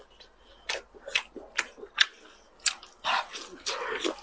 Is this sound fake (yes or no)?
no